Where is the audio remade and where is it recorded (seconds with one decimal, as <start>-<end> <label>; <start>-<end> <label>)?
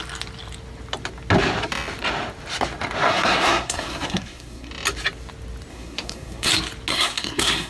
0.0-3.1 recorded; 3.1-4.7 remade; 4.7-5.7 recorded; 5.7-6.5 remade; 6.5-6.9 recorded; 6.9-7.7 remade